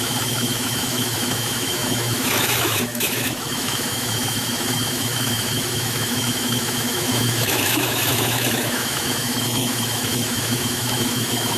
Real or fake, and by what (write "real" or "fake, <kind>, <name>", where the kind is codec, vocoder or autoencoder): fake, autoencoder, DAC-VAE